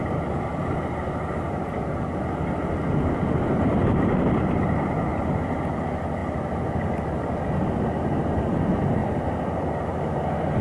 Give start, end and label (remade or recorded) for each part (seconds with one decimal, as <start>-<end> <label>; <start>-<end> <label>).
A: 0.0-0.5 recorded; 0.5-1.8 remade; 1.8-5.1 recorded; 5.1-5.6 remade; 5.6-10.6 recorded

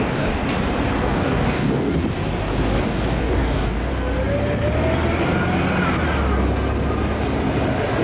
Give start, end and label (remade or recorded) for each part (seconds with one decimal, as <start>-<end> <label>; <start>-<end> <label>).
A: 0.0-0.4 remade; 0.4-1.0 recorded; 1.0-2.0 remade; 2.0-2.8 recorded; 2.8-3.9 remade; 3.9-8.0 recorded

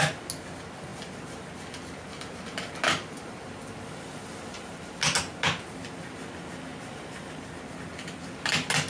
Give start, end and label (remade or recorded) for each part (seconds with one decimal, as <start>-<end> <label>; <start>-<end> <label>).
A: 0.0-6.7 recorded; 6.7-7.3 remade; 7.3-8.9 recorded

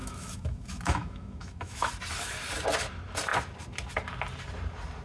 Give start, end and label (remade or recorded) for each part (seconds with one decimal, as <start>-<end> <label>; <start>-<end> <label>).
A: 0.0-1.9 remade; 1.9-5.0 recorded

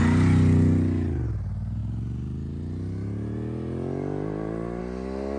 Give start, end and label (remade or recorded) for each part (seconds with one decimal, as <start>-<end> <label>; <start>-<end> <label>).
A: 0.0-5.4 recorded

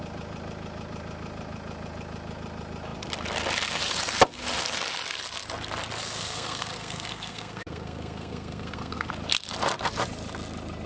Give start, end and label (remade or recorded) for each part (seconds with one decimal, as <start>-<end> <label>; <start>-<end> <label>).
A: 0.0-6.2 recorded; 6.2-9.1 remade; 9.1-10.9 recorded